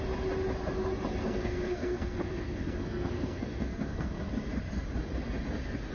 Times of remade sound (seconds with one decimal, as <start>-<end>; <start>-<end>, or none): 1.2-4.2